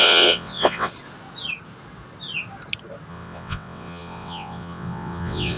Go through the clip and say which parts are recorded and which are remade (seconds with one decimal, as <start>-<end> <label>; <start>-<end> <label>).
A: 0.0-0.9 remade; 0.9-3.1 recorded; 3.1-5.6 remade